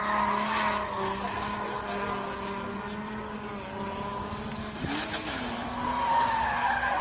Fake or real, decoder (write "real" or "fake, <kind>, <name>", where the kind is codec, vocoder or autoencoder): real